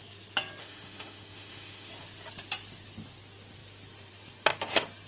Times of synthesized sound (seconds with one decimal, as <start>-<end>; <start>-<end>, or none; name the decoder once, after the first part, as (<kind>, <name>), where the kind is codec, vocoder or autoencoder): 0.6-1.9 (autoencoder, DAC-VAE)